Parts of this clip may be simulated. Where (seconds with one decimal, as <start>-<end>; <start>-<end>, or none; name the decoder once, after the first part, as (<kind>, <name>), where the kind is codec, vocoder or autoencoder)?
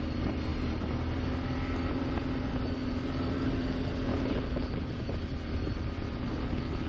4.1-4.9 (codec, HILCodec); 6.2-6.9